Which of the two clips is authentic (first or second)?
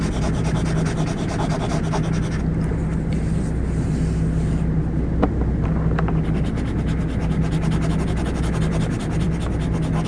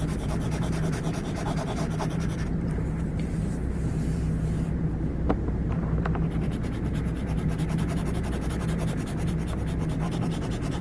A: first